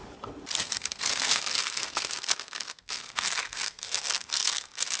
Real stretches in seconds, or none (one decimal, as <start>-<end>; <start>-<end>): 0.0-0.6